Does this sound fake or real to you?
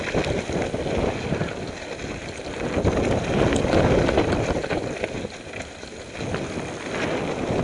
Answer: real